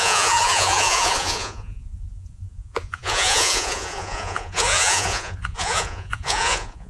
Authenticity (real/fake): fake